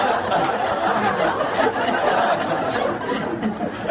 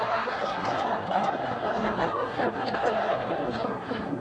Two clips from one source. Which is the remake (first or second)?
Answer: second